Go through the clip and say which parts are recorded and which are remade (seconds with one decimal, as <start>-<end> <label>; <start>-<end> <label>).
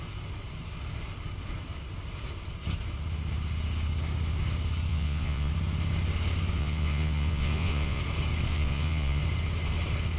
0.0-4.9 recorded; 4.9-5.5 remade; 5.5-6.6 recorded; 6.6-8.0 remade; 8.0-8.5 recorded; 8.5-9.2 remade; 9.2-10.2 recorded